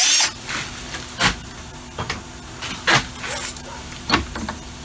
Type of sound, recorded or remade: recorded